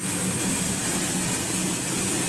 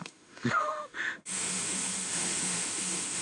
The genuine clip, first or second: first